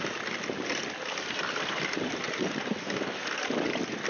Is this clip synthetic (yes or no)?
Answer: no